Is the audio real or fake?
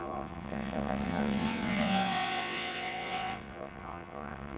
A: fake